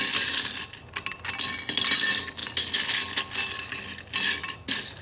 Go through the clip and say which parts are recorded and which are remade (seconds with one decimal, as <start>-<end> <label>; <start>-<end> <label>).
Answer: 0.0-4.4 recorded; 4.4-5.0 remade